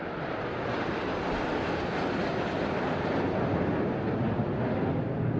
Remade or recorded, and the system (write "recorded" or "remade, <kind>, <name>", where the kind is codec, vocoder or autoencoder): recorded